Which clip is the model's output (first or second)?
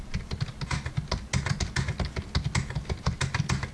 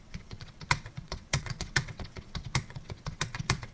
second